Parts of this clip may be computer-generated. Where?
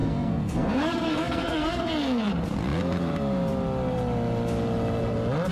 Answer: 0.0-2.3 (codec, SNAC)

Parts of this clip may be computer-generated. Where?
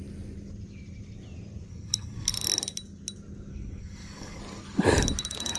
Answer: 1.7-2.3 (codec, SNAC); 3.5-4.4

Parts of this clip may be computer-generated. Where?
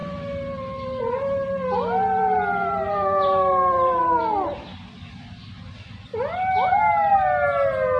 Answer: none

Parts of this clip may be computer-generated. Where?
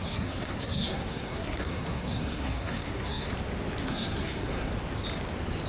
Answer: 0.0-3.3 (codec, SNAC); 3.8-4.7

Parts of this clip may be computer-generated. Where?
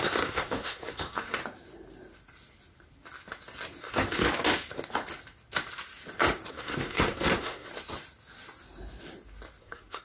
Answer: 0.0-1.4 (codec, SNAC); 3.8-4.2; 6.5-7.7; 9.6-10.0